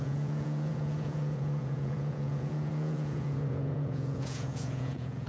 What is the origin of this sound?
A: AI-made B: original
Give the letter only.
A